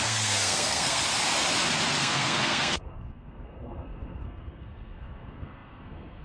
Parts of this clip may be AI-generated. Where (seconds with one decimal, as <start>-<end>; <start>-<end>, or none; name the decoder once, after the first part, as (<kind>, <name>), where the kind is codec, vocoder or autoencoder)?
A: 0.0-1.0 (codec, SNAC); 2.0-6.2